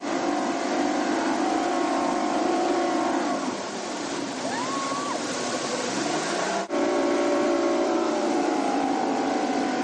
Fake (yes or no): yes